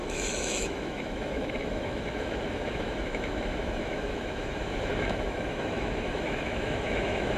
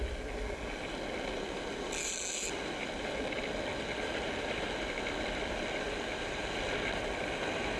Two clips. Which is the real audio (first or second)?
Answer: second